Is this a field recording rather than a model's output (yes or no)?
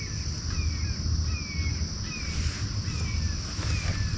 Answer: yes